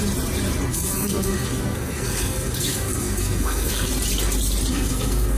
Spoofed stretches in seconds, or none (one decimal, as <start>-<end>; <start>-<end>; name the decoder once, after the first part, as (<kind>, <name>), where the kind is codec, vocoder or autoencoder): 0.7-3.9 (codec, SNAC); 4.7-5.4